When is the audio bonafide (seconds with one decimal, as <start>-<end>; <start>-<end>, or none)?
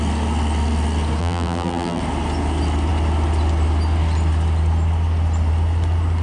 0.0-1.2; 2.0-6.2